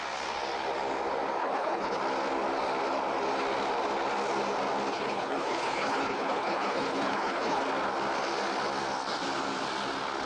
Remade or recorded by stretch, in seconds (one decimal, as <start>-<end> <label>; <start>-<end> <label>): 0.0-1.4 recorded; 1.4-2.0 remade; 2.0-4.9 recorded; 4.9-7.6 remade; 7.6-10.3 recorded